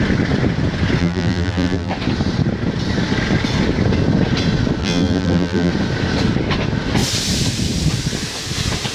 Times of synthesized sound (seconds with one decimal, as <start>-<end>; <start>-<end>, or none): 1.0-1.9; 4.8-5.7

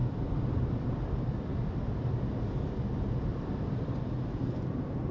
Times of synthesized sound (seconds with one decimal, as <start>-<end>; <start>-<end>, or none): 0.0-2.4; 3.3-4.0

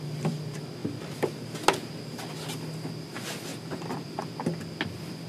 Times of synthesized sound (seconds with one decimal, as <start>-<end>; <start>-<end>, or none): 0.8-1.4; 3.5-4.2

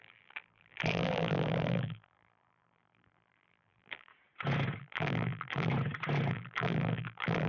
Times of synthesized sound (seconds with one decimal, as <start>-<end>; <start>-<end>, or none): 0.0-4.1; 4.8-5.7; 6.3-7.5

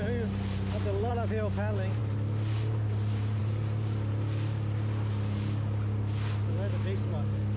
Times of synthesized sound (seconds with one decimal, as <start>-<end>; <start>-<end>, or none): 2.0-3.4

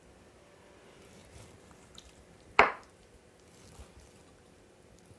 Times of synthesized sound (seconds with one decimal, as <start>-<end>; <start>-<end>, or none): 1.2-2.7

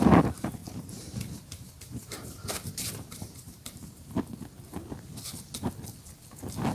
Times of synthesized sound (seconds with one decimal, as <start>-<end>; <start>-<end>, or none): 0.6-4.1